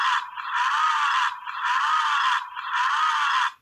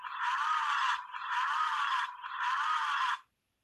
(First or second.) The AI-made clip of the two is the second